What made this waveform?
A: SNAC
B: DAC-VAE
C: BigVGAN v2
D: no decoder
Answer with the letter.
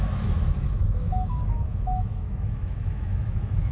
B